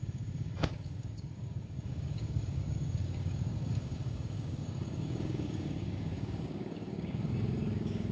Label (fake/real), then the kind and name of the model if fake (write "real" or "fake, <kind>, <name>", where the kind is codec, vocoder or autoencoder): fake, codec, DAC